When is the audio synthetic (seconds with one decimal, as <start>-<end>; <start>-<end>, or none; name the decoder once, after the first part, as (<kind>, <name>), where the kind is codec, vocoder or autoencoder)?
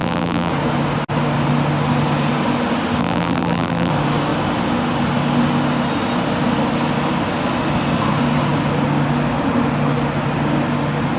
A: 0.0-0.5 (vocoder, BigVGAN v2); 3.0-3.9